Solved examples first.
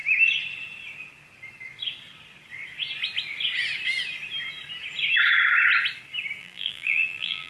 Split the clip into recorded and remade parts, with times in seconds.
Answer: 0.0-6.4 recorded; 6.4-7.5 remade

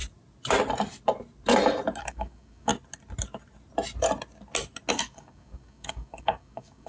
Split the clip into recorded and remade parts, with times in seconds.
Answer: 0.0-2.0 recorded; 2.0-2.7 remade; 2.7-4.9 recorded; 4.9-6.9 remade

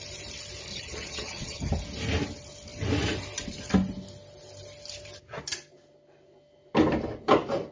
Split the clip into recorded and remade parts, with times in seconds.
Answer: 0.0-0.7 recorded; 0.7-1.7 remade; 1.7-7.7 recorded

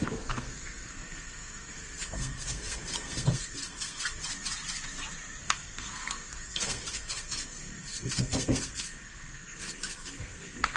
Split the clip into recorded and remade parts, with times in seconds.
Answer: 0.0-4.2 remade; 4.2-5.4 recorded; 5.4-10.8 remade

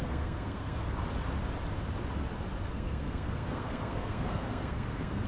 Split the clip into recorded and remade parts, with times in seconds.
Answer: 0.0-0.8 remade; 0.8-2.7 recorded; 2.7-5.3 remade

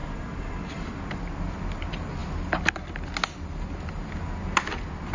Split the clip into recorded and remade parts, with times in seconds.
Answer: 0.0-1.1 remade; 1.1-5.1 recorded